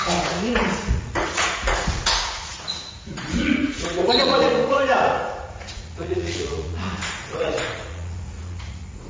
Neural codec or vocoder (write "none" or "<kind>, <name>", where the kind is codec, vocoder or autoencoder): vocoder, Vocos